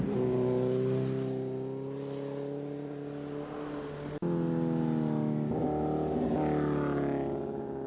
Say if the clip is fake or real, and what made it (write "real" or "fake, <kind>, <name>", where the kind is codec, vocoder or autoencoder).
real